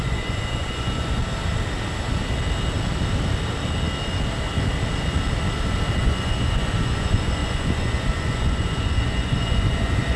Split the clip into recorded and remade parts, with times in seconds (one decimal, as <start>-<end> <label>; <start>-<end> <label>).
0.0-1.2 remade; 1.2-6.0 recorded; 6.0-10.2 remade